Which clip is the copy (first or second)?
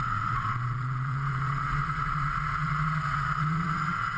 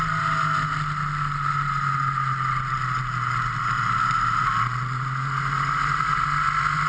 first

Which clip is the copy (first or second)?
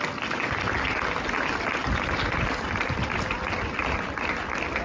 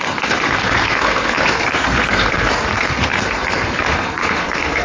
second